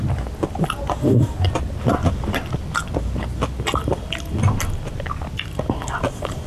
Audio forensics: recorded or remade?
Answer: recorded